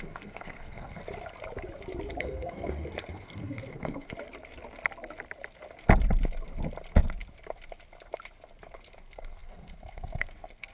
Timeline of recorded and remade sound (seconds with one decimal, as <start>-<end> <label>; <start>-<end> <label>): 0.0-1.0 remade; 1.0-2.2 recorded; 2.2-4.1 remade; 4.1-9.0 recorded; 9.0-10.7 remade